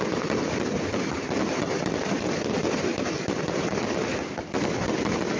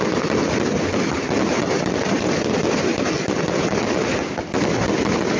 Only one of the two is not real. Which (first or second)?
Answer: first